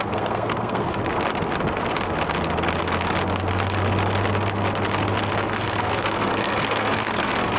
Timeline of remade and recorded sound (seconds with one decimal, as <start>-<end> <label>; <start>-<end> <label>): 0.0-1.0 remade; 1.0-5.6 recorded; 5.6-7.6 remade